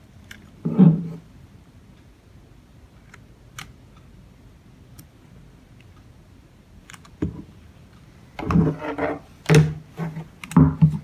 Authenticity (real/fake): real